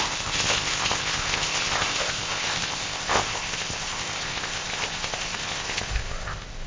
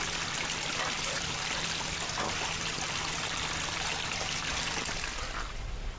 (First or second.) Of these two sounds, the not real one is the first